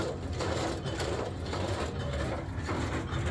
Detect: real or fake real